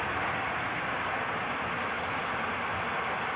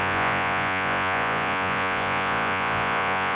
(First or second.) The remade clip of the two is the second